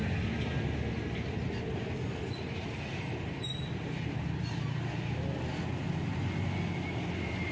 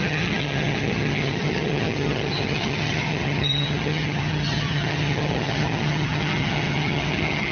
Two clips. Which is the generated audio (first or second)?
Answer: second